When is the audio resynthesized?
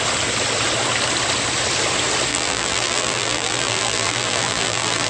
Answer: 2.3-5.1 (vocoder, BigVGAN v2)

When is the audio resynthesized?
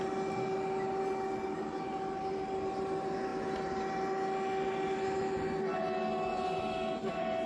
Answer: none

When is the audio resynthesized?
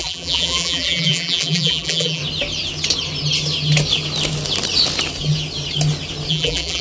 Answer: 0.0-2.2 (vocoder, BigVGAN v2); 6.3-6.8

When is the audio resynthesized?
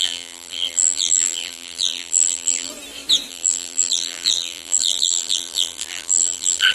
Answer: 0.0-2.7 (vocoder, BigVGAN v2); 3.3-6.7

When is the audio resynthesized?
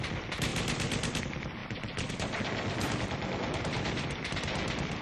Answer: none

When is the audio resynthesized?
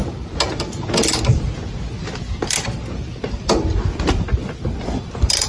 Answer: 0.0-0.6 (vocoder, BigVGAN v2)